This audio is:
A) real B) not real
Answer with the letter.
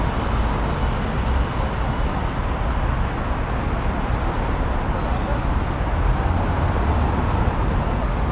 A